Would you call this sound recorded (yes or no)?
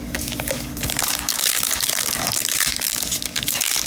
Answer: no